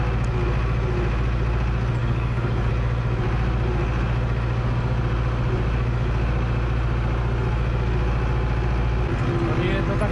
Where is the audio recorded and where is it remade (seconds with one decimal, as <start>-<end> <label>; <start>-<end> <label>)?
0.0-2.0 recorded; 2.0-2.7 remade; 2.7-10.1 recorded